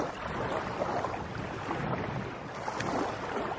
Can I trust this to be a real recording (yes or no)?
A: yes